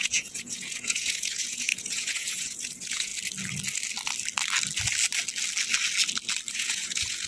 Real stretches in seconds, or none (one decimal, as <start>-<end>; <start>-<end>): 3.1-6.5

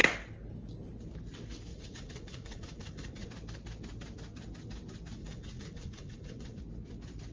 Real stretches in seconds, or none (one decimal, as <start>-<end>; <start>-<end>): 0.0-1.7; 3.3-5.2; 6.6-7.3

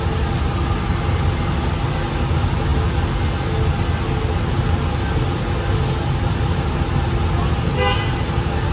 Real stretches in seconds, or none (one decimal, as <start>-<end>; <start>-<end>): 0.0-8.7

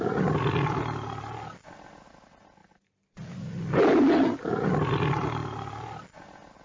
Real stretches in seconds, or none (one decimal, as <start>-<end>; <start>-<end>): 0.0-6.6

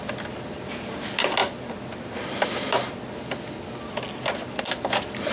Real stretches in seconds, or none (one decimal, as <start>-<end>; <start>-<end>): 0.0-5.3

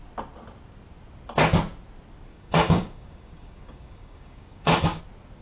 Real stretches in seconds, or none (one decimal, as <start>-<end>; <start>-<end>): 0.0-2.3; 5.0-5.4

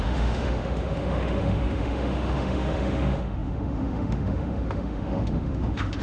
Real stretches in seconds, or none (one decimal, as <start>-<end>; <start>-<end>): none

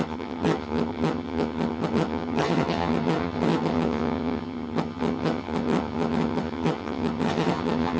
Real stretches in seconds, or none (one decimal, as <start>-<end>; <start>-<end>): none